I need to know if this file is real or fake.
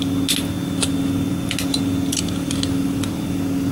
real